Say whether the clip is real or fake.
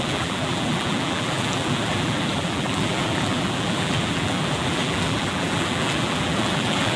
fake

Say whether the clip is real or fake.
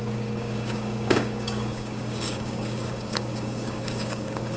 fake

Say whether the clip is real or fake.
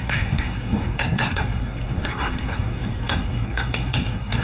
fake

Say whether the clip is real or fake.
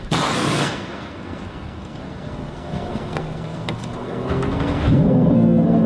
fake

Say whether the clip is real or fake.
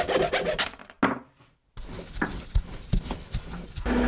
real